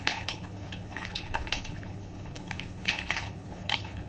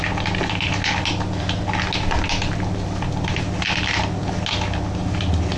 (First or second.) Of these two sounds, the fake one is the first